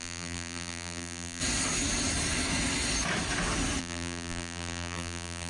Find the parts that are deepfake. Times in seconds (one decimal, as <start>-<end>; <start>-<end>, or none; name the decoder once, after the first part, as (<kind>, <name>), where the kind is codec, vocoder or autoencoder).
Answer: 0.0-1.4 (vocoder, BigVGAN v2); 3.8-5.5